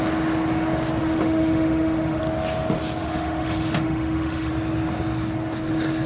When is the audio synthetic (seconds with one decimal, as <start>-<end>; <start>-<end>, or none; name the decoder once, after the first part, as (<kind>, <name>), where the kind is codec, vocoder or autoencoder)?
1.0-2.2 (autoencoder, DAC-VAE); 3.0-4.5